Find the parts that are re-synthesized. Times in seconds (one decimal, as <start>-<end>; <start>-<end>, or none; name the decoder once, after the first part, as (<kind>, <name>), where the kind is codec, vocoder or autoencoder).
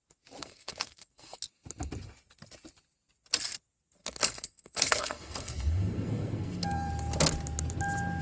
0.4-1.4 (codec, SNAC); 4.0-6.9